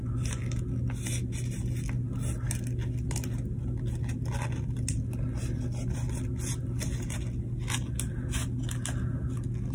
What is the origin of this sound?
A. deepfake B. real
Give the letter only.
B